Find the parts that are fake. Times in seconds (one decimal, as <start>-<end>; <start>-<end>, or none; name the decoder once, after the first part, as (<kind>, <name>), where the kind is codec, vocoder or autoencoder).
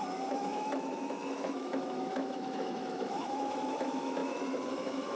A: 0.0-5.2 (autoencoder, DAC-VAE)